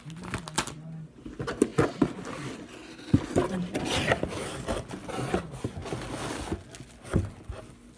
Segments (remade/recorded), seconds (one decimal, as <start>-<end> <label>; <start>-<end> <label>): 0.0-8.0 recorded